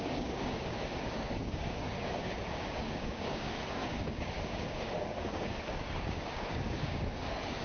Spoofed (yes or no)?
yes